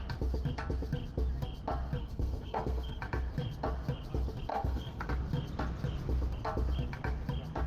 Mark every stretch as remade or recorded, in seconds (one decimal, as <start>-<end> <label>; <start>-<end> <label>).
0.0-2.0 recorded; 2.0-3.0 remade; 3.0-4.5 recorded; 4.5-5.1 remade; 5.1-7.7 recorded